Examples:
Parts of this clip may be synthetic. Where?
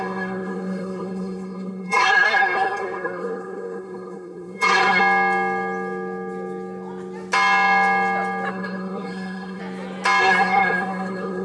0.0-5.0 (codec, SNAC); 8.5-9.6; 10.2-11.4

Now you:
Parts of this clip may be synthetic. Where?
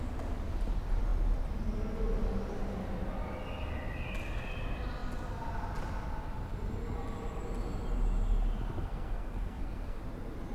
8.8-10.0 (codec, SNAC)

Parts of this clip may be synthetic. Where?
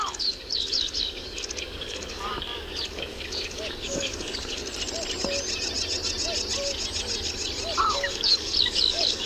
0.0-4.6 (codec, DAC); 7.9-9.3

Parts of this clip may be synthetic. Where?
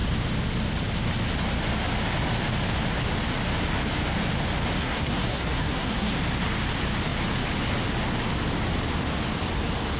4.8-6.1 (codec, SNAC)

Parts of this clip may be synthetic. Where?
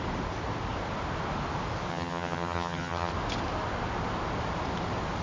1.9-3.1 (vocoder, HiFi-GAN)